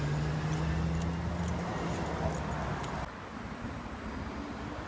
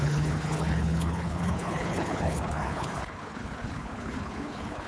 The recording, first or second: first